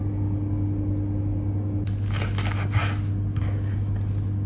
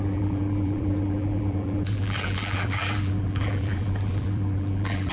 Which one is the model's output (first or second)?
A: second